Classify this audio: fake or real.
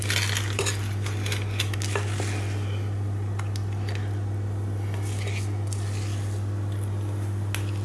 real